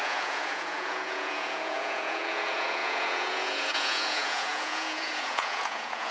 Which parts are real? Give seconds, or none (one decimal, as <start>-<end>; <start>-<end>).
none